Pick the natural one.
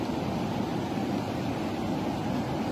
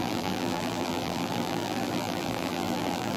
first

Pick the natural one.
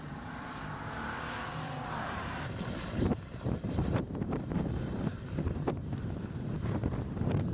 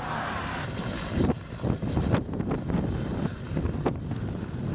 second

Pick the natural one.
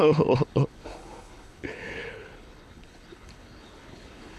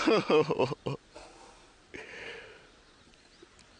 second